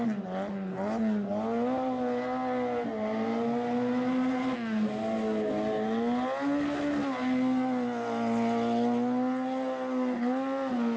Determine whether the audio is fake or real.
real